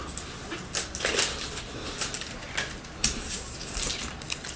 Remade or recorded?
remade